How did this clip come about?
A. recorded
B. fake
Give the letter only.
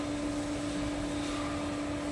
A